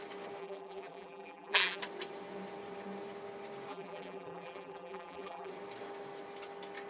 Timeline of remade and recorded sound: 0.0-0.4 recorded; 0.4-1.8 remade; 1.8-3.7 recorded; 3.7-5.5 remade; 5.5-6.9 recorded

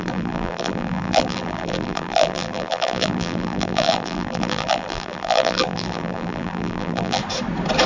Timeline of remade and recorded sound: 0.0-7.2 remade; 7.2-7.9 recorded

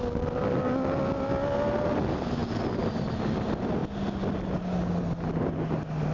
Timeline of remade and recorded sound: 0.0-6.1 recorded

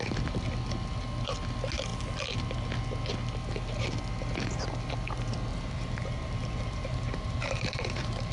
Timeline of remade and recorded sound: 0.0-5.5 recorded; 5.5-8.3 remade